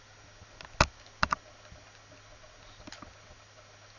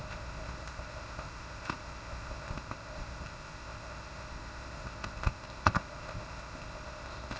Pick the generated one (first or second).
second